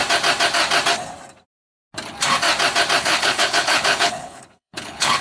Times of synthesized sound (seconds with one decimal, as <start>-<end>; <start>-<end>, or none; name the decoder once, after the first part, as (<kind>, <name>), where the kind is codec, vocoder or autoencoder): 3.0-5.2 (codec, HILCodec)

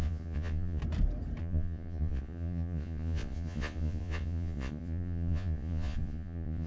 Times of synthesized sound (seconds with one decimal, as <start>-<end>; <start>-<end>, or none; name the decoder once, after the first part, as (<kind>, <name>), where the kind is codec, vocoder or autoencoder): 0.0-0.8 (vocoder, Vocos); 1.4-6.7

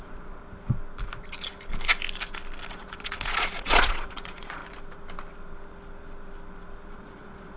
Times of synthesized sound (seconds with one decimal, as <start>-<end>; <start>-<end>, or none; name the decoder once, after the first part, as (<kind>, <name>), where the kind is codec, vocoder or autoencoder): 0.0-0.4 (vocoder, Vocos); 2.7-4.6; 6.9-7.6

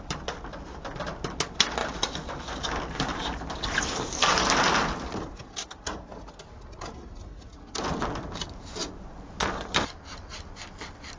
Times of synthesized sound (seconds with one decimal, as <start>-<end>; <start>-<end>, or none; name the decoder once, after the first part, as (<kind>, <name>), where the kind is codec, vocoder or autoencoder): none

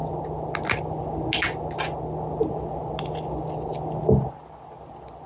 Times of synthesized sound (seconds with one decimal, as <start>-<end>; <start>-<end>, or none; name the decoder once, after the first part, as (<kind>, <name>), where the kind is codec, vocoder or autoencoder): none

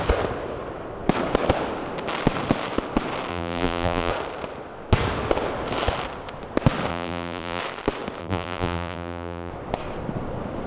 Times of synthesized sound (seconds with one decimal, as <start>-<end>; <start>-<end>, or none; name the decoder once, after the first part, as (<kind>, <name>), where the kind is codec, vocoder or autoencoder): 3.3-4.1 (vocoder, BigVGAN v2); 6.9-7.6; 8.2-9.5

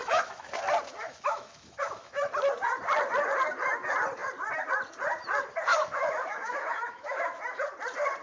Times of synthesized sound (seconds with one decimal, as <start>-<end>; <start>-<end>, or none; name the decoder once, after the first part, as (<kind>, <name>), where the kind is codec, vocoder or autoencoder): 0.0-0.5 (autoencoder, DAC-VAE); 1.0-2.3; 5.7-7.4